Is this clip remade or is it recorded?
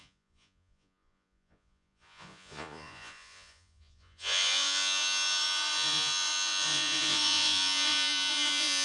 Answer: remade